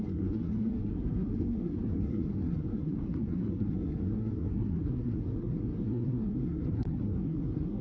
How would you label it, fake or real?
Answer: fake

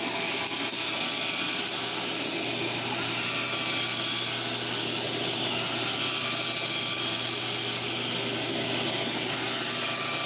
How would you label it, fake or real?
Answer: real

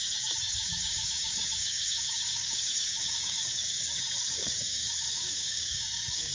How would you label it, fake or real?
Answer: fake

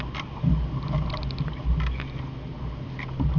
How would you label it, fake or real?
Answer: real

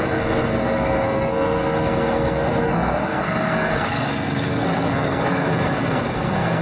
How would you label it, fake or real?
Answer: fake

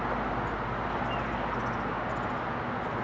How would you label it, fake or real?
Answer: real